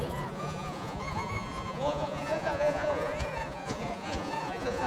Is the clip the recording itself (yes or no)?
no